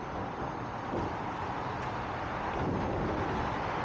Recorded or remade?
recorded